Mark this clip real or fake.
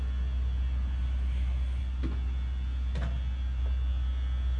real